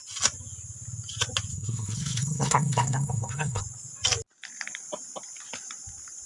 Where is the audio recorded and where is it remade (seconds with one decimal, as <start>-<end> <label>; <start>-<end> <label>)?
0.0-1.5 recorded; 1.5-3.6 remade; 3.6-6.3 recorded